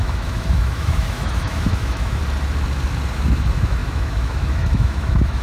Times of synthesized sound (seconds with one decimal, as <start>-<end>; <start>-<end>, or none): 0.0-2.2; 3.1-5.4